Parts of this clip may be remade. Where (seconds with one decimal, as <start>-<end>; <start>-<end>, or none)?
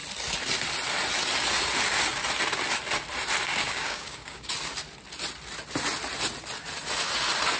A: 3.5-4.5